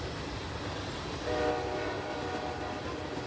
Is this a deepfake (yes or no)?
no